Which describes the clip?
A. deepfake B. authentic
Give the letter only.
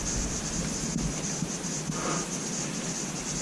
B